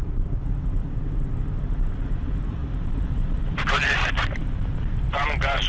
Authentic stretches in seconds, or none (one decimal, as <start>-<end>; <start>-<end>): 2.6-3.4